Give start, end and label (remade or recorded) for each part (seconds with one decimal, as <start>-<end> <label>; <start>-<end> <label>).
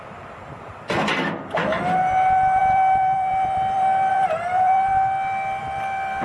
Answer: 0.0-4.9 remade; 4.9-5.6 recorded; 5.6-6.2 remade